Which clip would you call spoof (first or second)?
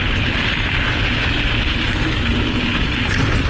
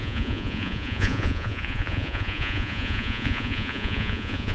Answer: second